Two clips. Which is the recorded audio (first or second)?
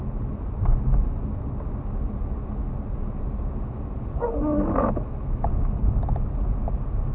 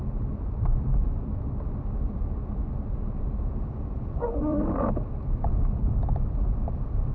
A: first